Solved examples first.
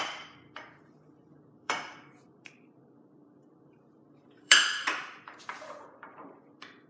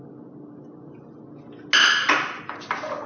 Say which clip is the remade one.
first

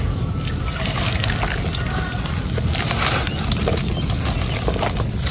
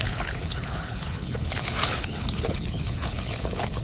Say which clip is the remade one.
second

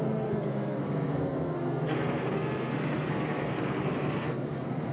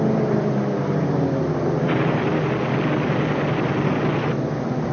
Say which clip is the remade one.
first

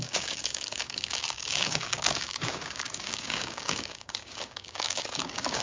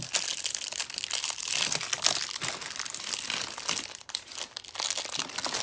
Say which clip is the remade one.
first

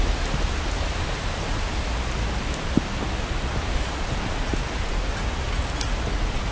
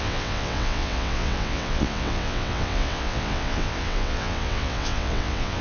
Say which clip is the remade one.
second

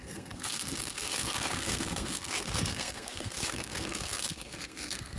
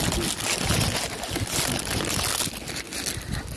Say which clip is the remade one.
first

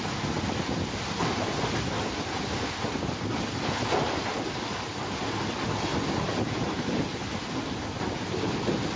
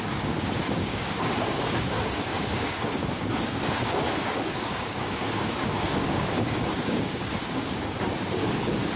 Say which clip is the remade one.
second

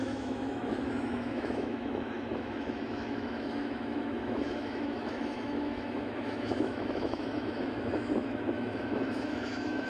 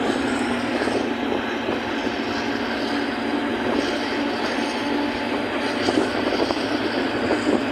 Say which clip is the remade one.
first